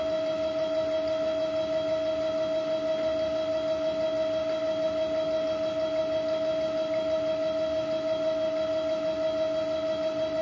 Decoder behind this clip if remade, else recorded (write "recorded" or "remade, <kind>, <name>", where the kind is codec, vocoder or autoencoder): recorded